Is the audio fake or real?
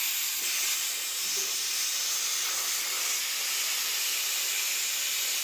real